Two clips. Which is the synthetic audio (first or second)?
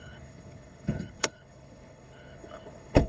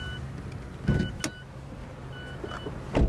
first